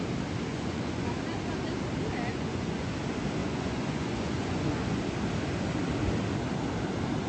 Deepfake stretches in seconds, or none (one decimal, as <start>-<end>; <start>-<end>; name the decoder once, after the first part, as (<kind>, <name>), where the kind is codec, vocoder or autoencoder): 0.5-1.1 (vocoder, Vocos); 2.3-2.9; 3.4-5.0